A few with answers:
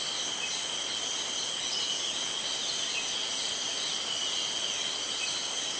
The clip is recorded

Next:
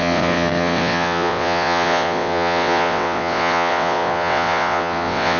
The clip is remade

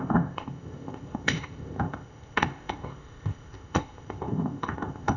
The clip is remade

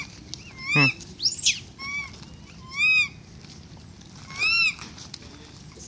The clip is recorded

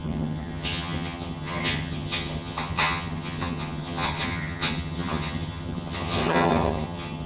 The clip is remade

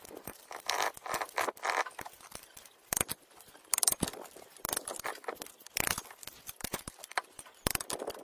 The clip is recorded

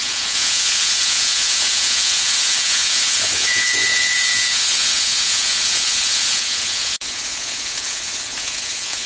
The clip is remade